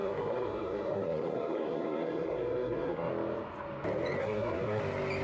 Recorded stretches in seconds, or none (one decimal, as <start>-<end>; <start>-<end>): 3.1-4.2; 4.8-5.2